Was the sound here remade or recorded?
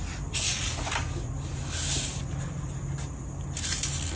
recorded